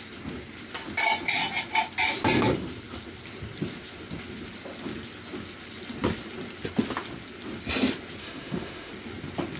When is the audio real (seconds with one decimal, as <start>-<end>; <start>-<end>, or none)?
0.0-8.2; 8.9-9.6